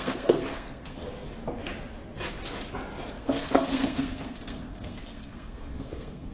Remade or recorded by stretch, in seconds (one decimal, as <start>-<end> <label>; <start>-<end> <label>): 0.0-1.0 remade; 1.0-3.1 recorded; 3.1-6.3 remade